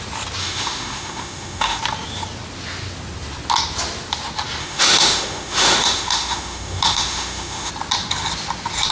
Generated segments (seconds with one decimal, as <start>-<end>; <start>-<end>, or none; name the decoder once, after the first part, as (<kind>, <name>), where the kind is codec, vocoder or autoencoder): 0.4-1.8 (autoencoder, DAC-VAE); 4.6-7.7